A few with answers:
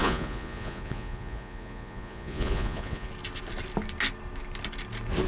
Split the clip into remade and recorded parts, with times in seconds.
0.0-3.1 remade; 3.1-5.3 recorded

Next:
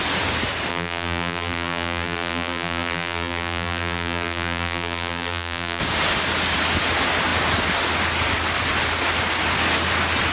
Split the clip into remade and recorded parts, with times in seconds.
0.0-0.7 recorded; 0.7-5.8 remade; 5.8-10.3 recorded